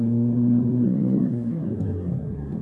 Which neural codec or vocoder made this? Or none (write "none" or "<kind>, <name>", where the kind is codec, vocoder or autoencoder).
codec, SNAC